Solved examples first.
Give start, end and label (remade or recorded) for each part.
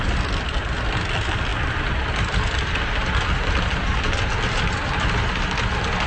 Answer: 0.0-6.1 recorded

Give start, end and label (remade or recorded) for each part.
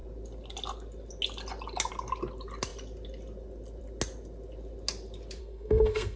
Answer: 0.0-5.4 recorded; 5.4-6.2 remade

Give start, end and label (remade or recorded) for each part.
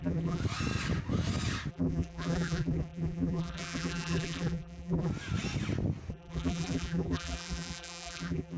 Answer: 0.0-0.4 remade; 0.4-1.7 recorded; 1.7-5.1 remade; 5.1-6.1 recorded; 6.1-8.6 remade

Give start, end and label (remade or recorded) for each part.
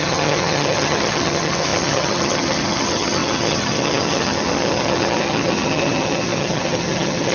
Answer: 0.0-7.3 remade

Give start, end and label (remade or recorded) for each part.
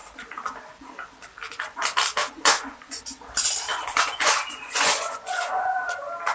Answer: 0.0-2.2 recorded; 2.2-3.0 remade; 3.0-3.7 recorded; 3.7-5.8 remade; 5.8-6.3 recorded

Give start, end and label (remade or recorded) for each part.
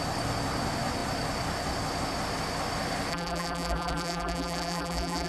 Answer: 0.0-3.1 recorded; 3.1-5.3 remade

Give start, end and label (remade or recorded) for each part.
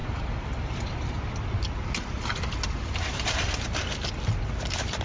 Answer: 0.0-5.0 recorded